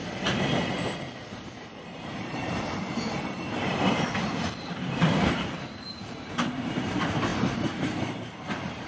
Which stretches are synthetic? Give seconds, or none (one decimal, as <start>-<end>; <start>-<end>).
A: 0.0-7.3